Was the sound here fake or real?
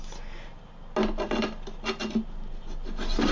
real